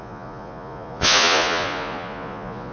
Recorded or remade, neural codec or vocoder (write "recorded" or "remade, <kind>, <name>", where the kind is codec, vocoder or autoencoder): remade, vocoder, Vocos